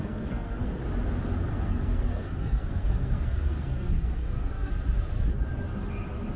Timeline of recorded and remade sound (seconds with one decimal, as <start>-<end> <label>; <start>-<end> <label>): 0.0-0.8 remade; 0.8-1.5 recorded; 1.5-4.7 remade; 4.7-6.4 recorded